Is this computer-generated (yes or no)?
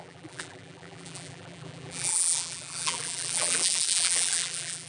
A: yes